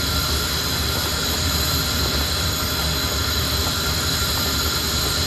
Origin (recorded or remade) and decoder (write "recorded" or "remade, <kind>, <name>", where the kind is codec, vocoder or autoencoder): recorded